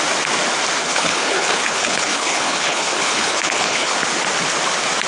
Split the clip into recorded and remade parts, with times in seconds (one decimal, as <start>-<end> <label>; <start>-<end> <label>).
0.0-0.8 recorded; 0.8-3.9 remade; 3.9-5.1 recorded